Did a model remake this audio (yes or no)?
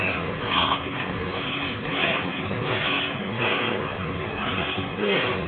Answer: yes